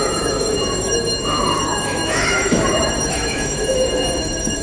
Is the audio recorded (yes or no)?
no